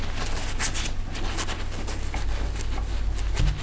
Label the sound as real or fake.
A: real